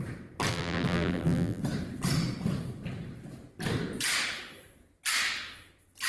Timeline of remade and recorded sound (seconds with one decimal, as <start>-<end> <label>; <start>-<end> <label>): 0.0-0.5 recorded; 0.5-1.6 remade; 1.6-6.1 recorded